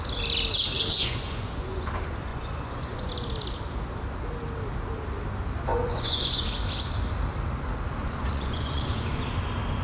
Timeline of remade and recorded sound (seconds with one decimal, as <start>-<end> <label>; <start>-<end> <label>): 0.0-0.9 recorded; 0.9-1.9 remade; 1.9-2.3 recorded; 2.3-3.1 remade; 3.1-5.7 recorded; 5.7-6.5 remade; 6.5-8.0 recorded; 8.0-9.3 remade; 9.3-9.8 recorded